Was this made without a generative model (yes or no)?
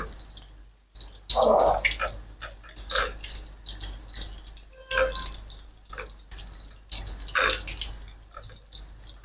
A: yes